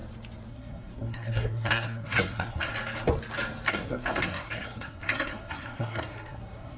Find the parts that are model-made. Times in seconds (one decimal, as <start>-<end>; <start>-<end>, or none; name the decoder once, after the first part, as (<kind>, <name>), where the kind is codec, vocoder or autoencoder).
0.5-2.7 (codec, SNAC); 3.7-6.8

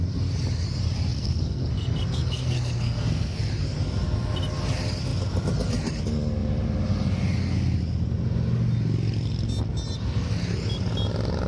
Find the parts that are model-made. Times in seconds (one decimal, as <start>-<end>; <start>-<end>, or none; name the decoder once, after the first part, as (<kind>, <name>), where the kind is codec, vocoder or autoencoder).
1.1-3.5 (codec, SNAC)

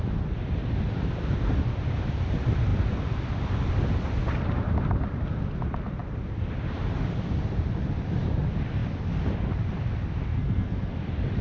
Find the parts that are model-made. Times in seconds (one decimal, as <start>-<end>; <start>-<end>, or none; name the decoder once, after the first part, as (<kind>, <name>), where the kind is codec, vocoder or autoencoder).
10.3-10.9 (codec, SNAC)

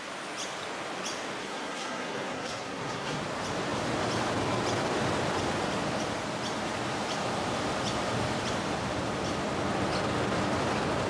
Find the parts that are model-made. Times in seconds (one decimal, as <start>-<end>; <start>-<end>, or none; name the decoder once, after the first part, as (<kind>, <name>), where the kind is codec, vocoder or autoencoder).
1.4-3.2 (codec, SNAC)

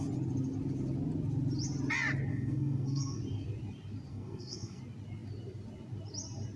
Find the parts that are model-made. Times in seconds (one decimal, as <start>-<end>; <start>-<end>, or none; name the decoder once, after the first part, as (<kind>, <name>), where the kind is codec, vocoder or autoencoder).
2.3-3.2 (codec, SNAC); 4.1-4.8

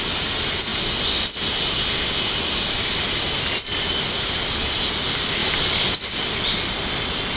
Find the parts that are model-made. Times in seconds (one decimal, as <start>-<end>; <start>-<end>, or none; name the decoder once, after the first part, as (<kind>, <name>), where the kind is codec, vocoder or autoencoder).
none